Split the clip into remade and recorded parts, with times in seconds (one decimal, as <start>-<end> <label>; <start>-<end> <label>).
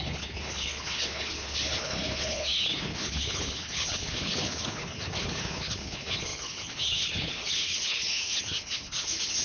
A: 0.0-9.4 remade